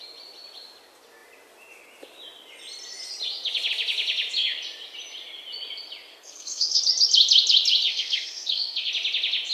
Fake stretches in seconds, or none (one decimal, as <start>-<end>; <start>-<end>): 6.1-6.8; 7.9-8.9